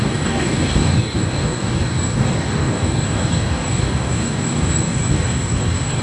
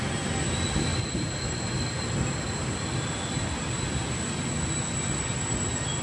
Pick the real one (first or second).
second